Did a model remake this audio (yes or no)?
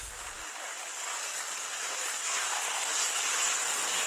no